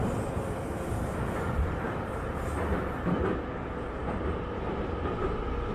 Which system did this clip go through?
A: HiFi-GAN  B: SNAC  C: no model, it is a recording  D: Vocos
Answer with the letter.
C